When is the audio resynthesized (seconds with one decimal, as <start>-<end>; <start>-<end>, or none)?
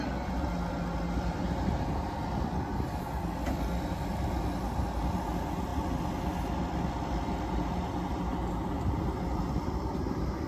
none